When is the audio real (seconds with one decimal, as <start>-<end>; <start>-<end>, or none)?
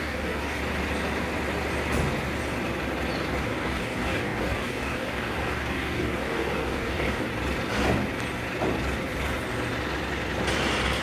0.6-3.4; 7.3-11.0